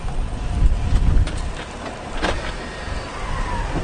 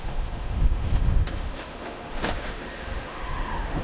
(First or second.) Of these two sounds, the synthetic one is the second